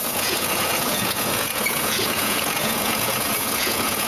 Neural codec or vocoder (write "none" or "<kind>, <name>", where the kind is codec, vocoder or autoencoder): vocoder, Vocos